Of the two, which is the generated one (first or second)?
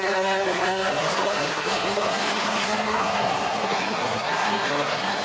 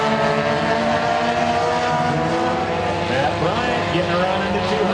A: first